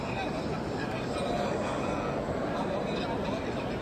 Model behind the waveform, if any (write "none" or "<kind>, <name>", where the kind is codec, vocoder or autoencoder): none